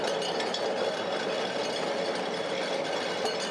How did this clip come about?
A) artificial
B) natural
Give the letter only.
B